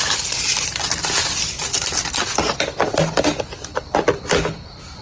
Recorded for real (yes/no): yes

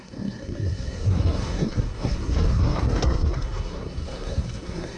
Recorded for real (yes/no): no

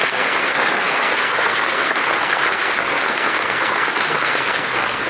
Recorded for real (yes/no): no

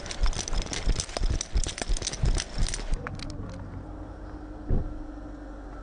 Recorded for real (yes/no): yes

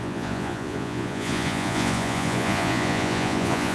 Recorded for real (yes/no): no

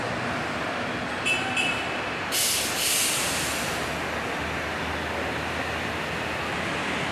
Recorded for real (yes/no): yes